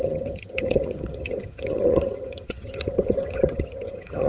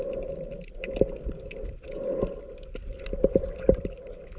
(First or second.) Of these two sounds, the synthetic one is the first